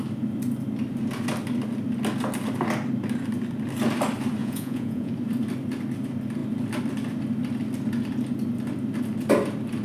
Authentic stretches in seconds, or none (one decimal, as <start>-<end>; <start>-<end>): 0.0-4.4; 5.1-9.8